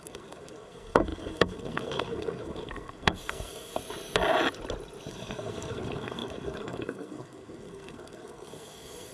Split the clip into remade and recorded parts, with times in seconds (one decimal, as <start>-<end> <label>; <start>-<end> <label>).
0.0-3.8 remade; 3.8-5.1 recorded; 5.1-9.1 remade